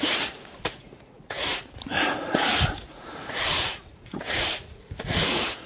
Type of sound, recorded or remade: remade